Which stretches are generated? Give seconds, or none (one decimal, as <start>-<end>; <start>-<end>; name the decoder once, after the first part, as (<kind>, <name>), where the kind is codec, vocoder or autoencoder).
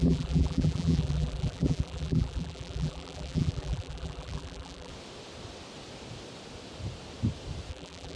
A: 0.0-4.9 (vocoder, BigVGAN v2); 7.7-8.2